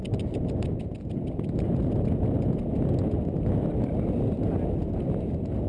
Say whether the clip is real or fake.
real